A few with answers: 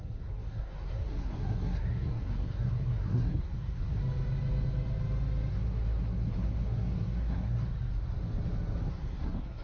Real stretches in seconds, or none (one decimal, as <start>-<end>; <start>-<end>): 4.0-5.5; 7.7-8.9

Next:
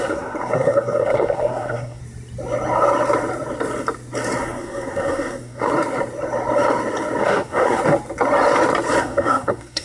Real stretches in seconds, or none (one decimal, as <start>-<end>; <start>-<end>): 2.0-4.4; 5.7-7.2; 7.8-9.0

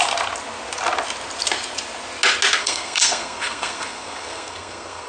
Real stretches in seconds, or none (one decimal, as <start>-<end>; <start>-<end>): 0.0-2.6

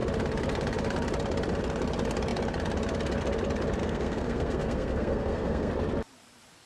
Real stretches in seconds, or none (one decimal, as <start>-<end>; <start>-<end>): 0.0-3.8; 5.7-6.7